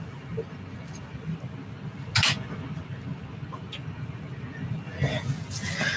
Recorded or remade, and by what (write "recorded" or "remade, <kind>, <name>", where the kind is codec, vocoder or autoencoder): recorded